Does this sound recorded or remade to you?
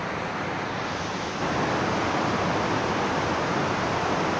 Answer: recorded